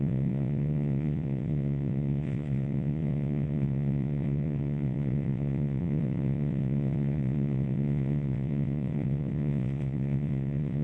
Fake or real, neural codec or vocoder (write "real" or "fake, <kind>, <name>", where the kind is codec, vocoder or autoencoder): fake, vocoder, WaveNeXt